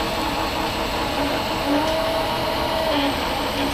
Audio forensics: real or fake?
real